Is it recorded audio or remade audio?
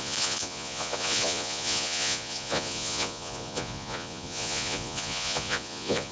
remade